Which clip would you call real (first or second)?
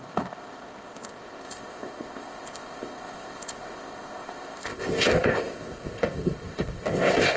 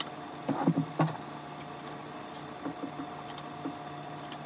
second